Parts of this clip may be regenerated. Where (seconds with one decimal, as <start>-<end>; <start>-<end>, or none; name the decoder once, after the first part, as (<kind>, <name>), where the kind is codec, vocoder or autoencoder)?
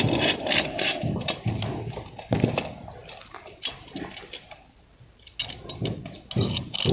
none